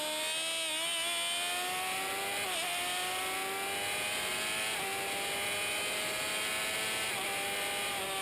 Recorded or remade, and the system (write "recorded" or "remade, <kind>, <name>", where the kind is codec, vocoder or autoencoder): recorded